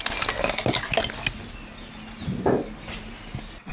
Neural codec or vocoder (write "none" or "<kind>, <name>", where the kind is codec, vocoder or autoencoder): none